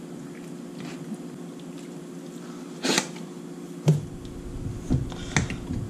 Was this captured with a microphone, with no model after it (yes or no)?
yes